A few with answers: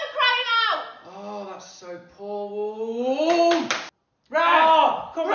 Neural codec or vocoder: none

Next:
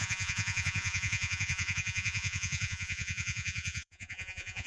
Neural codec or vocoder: vocoder, Vocos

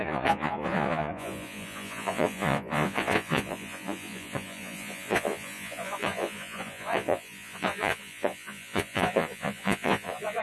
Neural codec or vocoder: vocoder, Vocos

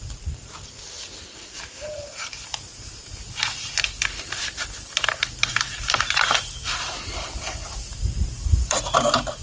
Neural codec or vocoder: vocoder, BigVGAN v2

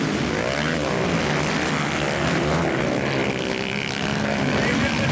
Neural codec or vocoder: none